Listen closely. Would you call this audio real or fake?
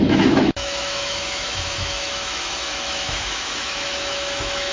fake